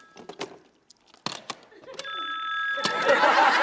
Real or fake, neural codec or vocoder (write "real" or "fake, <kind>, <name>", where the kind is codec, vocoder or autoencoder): real